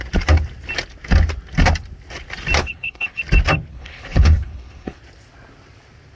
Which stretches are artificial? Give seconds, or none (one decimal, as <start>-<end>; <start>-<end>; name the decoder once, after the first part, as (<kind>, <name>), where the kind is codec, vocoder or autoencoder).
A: 2.6-3.2 (codec, HILCodec); 3.7-5.0